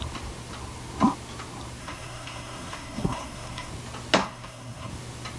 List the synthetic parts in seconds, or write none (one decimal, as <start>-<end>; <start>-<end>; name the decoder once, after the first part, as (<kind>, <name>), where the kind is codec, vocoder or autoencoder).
1.8-3.7 (codec, SNAC); 4.2-4.9